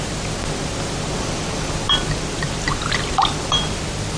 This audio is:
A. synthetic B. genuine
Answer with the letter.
B